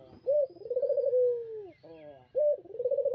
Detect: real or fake real